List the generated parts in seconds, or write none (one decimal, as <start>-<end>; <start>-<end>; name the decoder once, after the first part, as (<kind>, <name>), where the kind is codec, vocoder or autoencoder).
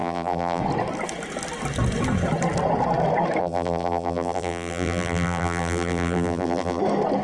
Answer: 0.0-0.6 (vocoder, BigVGAN v2); 3.4-6.8